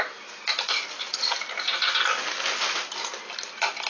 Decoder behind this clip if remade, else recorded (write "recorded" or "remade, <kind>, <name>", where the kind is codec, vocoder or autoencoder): recorded